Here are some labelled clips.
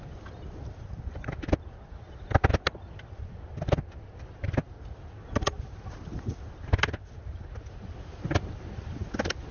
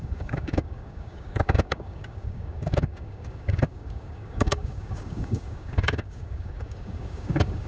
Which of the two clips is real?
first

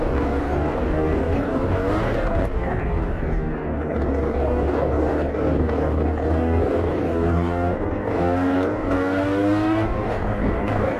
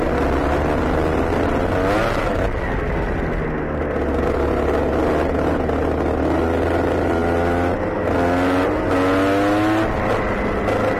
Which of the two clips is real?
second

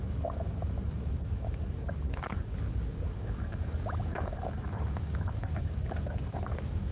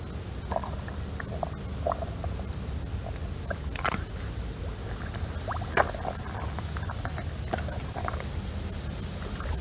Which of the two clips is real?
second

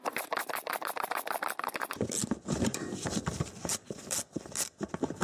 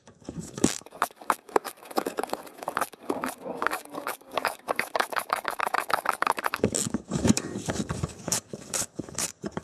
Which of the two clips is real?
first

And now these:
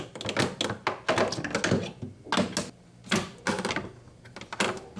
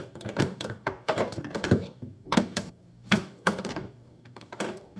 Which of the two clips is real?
first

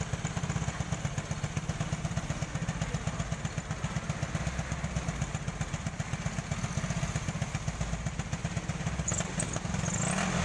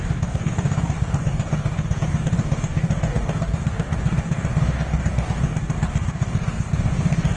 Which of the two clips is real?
first